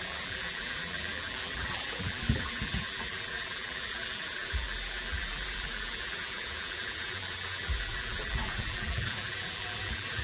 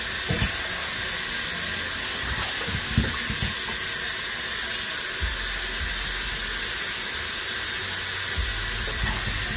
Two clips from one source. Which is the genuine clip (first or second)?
second